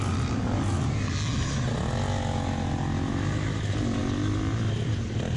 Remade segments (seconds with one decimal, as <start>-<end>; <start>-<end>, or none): none

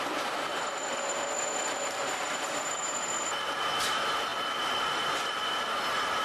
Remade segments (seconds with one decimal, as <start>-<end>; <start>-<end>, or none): 0.5-2.6